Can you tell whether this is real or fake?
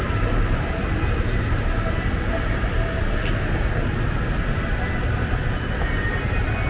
real